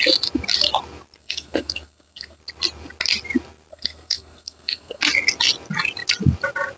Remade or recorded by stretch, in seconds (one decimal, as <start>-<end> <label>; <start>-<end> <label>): 0.0-1.2 recorded; 1.2-2.4 remade; 2.4-3.7 recorded; 3.7-5.0 remade; 5.0-6.8 recorded